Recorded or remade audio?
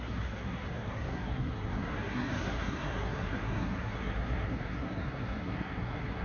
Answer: remade